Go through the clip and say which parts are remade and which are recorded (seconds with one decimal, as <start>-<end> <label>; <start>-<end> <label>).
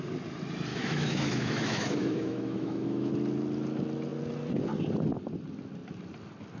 0.0-0.7 recorded; 0.7-3.1 remade; 3.1-6.6 recorded